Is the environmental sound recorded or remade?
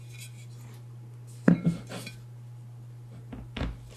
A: recorded